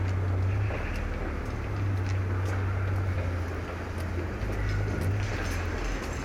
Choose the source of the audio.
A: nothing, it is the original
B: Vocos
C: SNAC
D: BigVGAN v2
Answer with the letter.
A